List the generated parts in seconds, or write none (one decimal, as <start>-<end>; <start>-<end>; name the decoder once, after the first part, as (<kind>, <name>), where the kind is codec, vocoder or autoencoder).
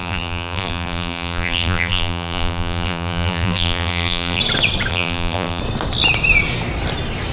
0.0-4.4 (vocoder, BigVGAN v2); 4.9-5.6